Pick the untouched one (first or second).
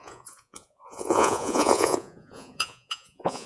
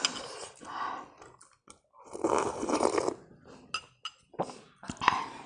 second